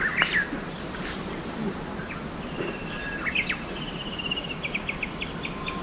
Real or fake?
real